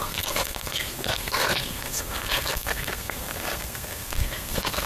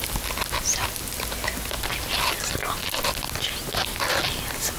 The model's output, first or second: first